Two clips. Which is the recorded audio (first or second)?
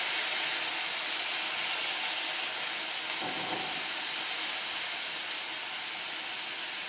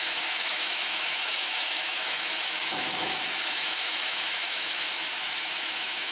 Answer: first